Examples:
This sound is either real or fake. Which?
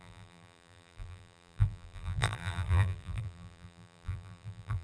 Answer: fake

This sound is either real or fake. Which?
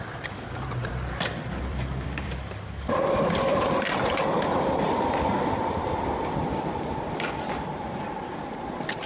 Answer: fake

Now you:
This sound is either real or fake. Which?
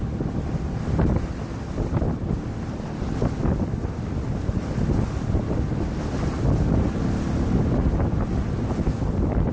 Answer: real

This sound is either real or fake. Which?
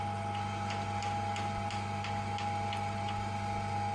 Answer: real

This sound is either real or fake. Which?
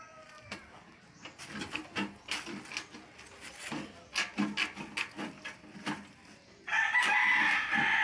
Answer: real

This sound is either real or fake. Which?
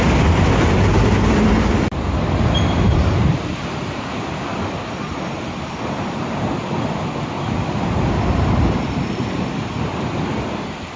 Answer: fake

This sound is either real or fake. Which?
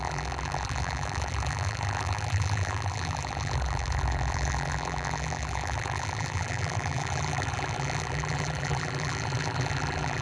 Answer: fake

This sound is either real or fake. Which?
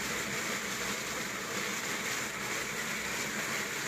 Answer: real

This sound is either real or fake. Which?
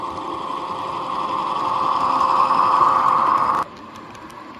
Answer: real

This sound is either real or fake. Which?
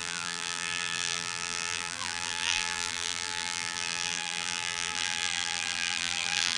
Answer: fake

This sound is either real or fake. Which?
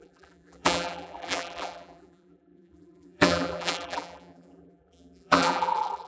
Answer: fake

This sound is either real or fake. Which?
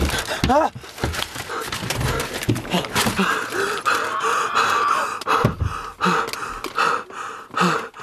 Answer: real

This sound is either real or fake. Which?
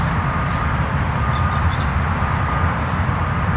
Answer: real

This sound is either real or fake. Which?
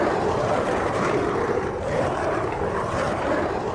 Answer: fake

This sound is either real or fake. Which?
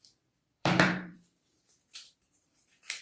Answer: fake